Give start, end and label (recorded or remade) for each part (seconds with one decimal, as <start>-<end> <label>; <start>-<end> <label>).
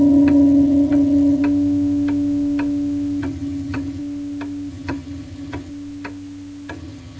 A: 0.0-1.4 remade; 1.4-3.2 recorded; 3.2-4.0 remade; 4.0-4.7 recorded; 4.7-5.7 remade; 5.7-6.7 recorded; 6.7-7.2 remade